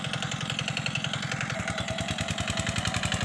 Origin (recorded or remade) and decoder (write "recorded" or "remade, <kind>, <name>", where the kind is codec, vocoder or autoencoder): recorded